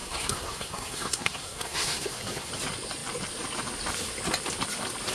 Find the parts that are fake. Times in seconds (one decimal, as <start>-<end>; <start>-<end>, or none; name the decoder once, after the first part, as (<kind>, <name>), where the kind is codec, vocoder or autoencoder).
0.0-2.5 (codec, SNAC)